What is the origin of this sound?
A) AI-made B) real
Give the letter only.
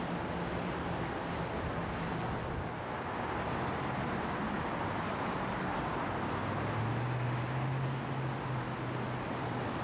B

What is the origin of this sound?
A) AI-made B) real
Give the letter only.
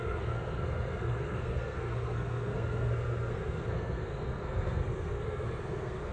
A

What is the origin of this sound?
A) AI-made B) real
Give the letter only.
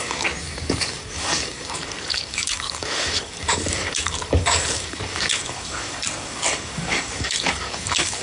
A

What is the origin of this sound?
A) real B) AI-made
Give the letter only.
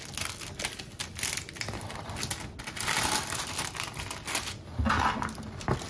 A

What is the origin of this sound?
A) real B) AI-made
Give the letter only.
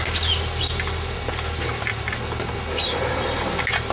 A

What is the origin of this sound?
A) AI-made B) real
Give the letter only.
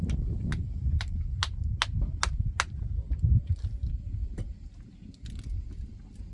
B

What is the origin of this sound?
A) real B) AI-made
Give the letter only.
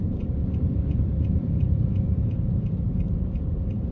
B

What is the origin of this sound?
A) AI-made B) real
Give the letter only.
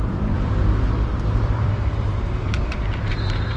A